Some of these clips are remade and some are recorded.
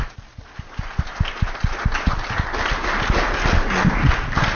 recorded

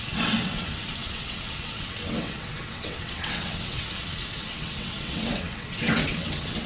remade